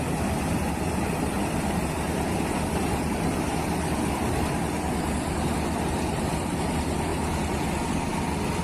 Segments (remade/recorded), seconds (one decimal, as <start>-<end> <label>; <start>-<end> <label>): 0.0-8.6 recorded